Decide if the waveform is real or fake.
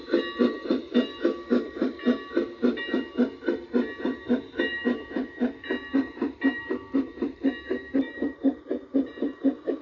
real